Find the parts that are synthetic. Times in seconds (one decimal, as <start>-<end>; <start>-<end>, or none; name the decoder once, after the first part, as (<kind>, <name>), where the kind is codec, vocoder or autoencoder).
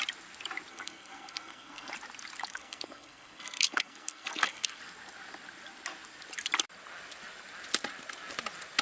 0.7-1.9 (codec, SNAC); 2.4-4.8